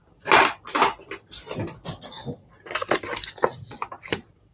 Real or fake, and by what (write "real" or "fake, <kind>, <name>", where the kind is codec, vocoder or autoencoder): real